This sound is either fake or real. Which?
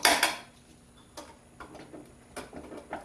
real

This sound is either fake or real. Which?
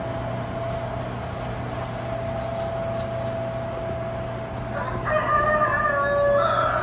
real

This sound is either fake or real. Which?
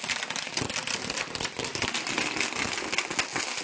real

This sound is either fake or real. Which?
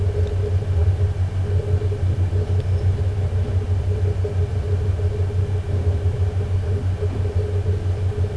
real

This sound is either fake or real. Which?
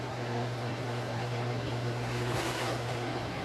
fake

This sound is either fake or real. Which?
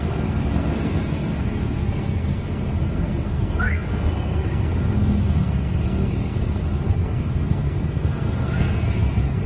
fake